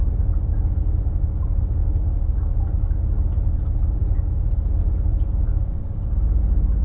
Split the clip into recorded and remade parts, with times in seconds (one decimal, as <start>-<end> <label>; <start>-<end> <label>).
0.0-1.8 recorded; 1.8-2.6 remade; 2.6-6.8 recorded